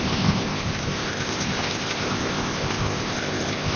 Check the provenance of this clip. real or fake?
fake